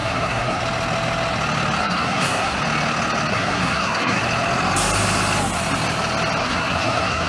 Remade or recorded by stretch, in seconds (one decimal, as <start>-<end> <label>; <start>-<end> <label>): 0.0-0.6 remade; 0.6-1.8 recorded; 1.8-2.6 remade; 2.6-3.3 recorded; 3.3-4.2 remade; 4.2-6.4 recorded; 6.4-7.3 remade